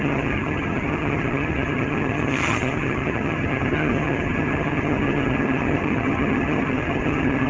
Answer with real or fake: fake